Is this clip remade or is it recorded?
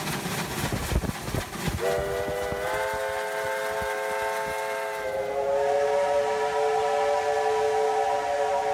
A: recorded